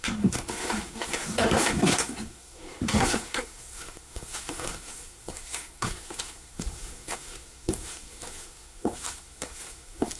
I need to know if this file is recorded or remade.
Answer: remade